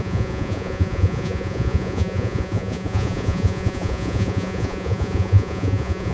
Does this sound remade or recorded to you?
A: remade